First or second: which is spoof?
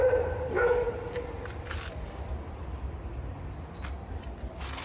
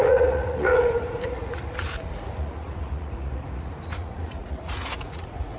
second